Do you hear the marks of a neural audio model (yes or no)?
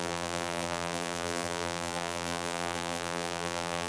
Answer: yes